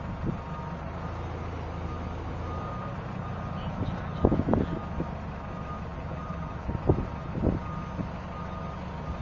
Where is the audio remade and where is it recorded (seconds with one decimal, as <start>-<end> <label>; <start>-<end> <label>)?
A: 0.0-5.9 recorded; 5.9-6.7 remade; 6.7-9.2 recorded